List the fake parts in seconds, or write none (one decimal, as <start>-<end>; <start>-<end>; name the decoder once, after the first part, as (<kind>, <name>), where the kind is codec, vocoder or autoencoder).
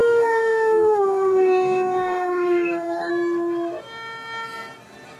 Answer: 0.0-3.1 (codec, DAC)